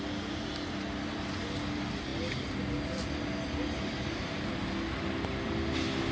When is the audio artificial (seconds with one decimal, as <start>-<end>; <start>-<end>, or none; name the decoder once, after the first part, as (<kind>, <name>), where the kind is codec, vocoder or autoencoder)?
none